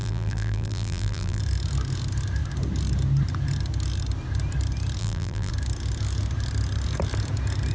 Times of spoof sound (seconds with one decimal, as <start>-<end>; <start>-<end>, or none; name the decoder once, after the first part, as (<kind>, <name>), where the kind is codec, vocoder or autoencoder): 0.0-1.4 (vocoder, BigVGAN v2); 5.0-5.5